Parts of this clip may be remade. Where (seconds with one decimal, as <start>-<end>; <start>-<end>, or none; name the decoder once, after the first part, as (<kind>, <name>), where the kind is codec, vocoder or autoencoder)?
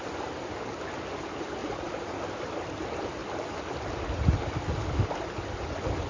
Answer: 1.6-2.2 (vocoder, Vocos)